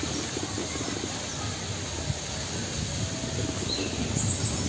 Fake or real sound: real